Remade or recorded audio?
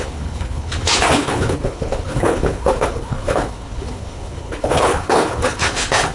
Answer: remade